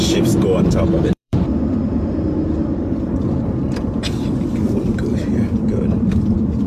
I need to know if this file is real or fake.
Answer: fake